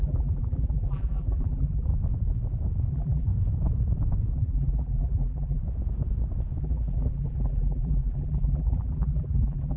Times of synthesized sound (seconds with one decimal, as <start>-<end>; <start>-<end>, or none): 0.0-1.9; 2.9-3.3; 4.3-5.6; 6.6-9.8